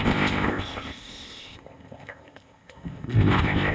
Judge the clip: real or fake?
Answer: fake